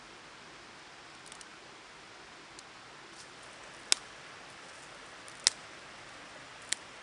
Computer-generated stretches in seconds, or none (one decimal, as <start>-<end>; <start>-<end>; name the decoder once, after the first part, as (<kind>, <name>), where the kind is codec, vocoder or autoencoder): none